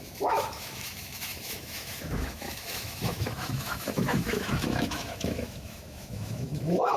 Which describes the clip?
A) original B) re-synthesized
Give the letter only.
B